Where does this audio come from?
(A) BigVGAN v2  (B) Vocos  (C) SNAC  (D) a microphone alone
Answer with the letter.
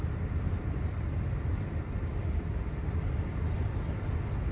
D